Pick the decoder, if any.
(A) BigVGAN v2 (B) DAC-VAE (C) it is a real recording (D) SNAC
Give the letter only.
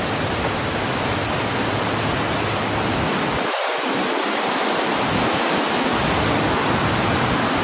C